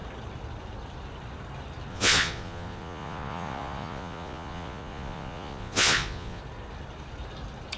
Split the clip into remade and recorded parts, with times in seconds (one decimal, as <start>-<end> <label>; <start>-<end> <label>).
0.0-1.9 recorded; 1.9-6.4 remade; 6.4-7.8 recorded